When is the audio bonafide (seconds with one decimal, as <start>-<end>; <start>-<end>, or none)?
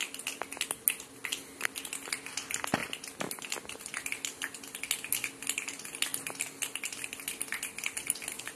0.0-8.6